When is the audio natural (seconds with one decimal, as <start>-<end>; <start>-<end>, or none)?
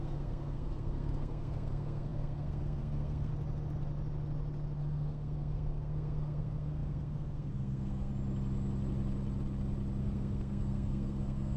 3.3-4.8; 8.1-10.0